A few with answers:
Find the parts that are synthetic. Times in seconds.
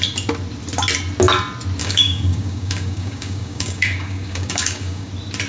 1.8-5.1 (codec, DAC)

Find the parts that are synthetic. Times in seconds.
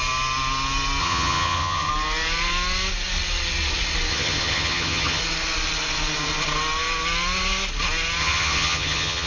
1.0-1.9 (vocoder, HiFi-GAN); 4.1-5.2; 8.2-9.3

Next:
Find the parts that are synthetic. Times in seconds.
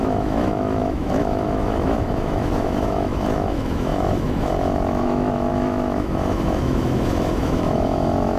0.0-8.4 (autoencoder, DAC-VAE)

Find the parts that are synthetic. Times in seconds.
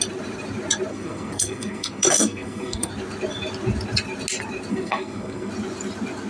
0.9-2.9 (codec, SNAC); 4.7-5.5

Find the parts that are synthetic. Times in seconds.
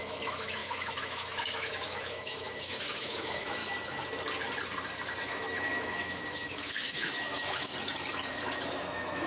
0.0-3.6 (autoencoder, DAC-VAE); 5.3-7.7; 8.3-9.3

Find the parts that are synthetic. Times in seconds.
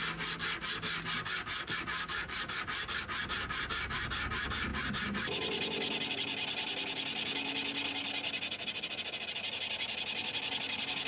1.9-2.6 (codec, DAC)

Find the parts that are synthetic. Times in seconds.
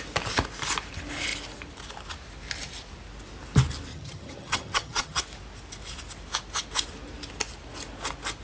3.9-5.2 (vocoder, HiFi-GAN)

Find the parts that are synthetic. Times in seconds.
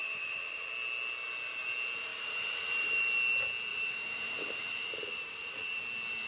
0.0-0.7 (vocoder, BigVGAN v2); 2.1-3.0; 3.7-5.8